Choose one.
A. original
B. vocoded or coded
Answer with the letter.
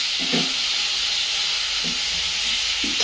A